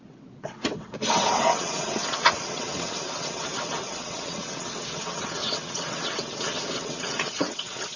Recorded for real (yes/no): no